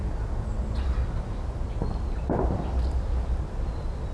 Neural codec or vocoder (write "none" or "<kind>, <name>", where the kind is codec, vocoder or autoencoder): none